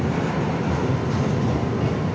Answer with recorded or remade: recorded